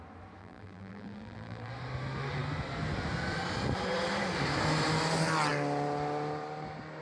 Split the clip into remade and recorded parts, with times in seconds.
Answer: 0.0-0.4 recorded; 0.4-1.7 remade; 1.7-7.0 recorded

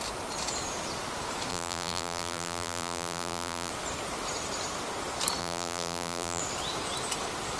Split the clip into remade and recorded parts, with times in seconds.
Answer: 0.0-1.5 recorded; 1.5-3.7 remade; 3.7-5.4 recorded; 5.4-6.4 remade; 6.4-7.6 recorded